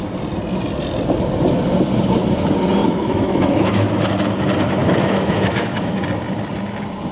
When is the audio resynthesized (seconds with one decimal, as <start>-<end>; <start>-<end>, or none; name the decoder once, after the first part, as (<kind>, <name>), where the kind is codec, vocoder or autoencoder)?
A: 2.8-3.9 (autoencoder, DAC-VAE); 4.8-6.0